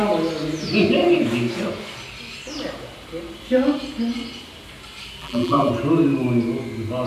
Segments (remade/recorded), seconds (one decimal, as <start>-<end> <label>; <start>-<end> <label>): 0.0-5.2 recorded; 5.2-5.7 remade; 5.7-7.1 recorded